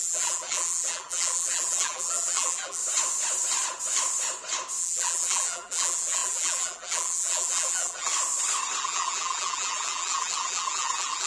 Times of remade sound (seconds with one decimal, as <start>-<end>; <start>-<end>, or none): 0.0-2.8; 4.8-8.1; 8.8-11.3